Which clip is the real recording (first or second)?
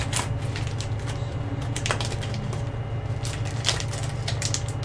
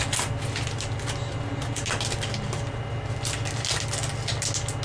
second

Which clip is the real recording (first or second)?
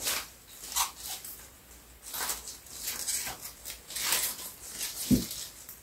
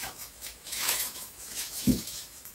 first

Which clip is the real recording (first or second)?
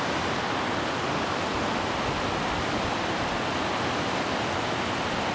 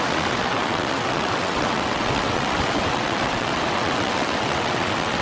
first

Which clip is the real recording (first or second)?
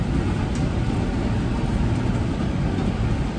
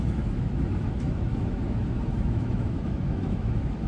first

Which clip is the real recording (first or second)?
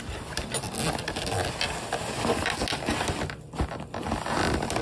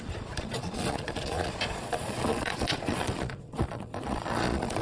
first